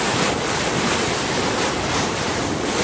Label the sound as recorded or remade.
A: recorded